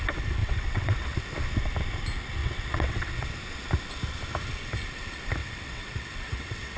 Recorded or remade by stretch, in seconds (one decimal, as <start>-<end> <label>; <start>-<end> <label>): 0.0-0.4 recorded; 0.4-1.2 remade; 1.2-2.4 recorded; 2.4-3.3 remade; 3.3-5.4 recorded; 5.4-6.8 remade

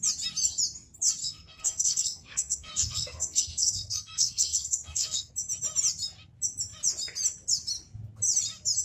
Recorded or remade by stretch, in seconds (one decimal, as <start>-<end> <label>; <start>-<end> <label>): 0.0-1.2 recorded; 1.2-5.3 remade; 5.3-8.8 recorded